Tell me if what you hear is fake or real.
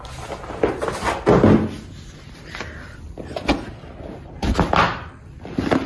real